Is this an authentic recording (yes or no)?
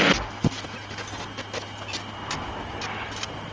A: yes